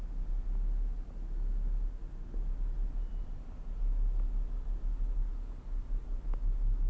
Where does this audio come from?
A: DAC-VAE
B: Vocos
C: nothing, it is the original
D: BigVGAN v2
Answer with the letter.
C